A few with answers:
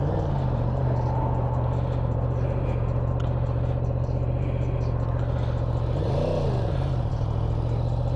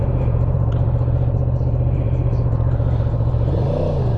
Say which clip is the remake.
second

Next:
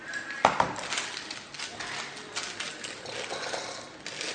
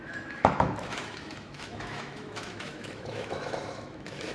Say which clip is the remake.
second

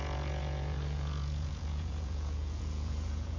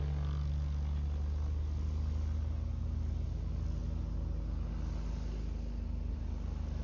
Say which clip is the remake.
first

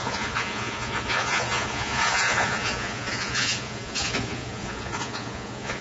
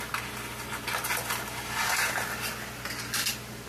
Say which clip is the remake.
first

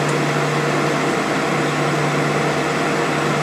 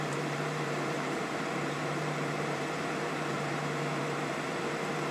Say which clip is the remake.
second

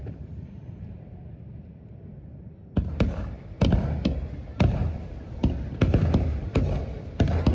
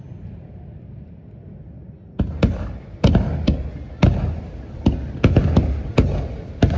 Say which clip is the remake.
first